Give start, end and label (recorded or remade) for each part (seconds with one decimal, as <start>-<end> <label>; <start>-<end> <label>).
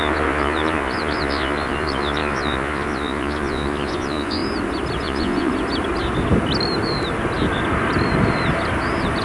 0.0-4.4 remade; 4.4-5.0 recorded; 5.0-5.5 remade; 5.5-9.2 recorded